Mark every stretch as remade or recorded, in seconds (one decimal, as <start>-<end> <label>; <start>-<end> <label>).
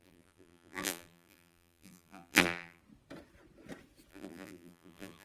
0.0-2.8 remade; 2.8-4.1 recorded; 4.1-5.2 remade